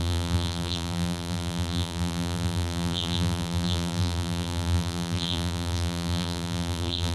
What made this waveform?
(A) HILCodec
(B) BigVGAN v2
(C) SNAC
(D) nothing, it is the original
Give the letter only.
B